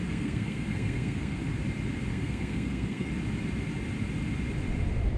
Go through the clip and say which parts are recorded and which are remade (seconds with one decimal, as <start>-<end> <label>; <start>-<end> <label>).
0.0-1.4 remade; 1.4-2.1 recorded; 2.1-3.1 remade; 3.1-5.2 recorded